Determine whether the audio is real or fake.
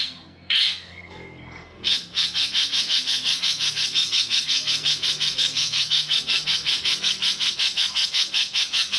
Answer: fake